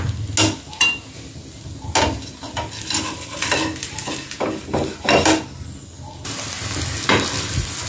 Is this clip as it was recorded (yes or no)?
yes